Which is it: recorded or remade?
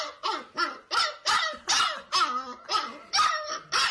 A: recorded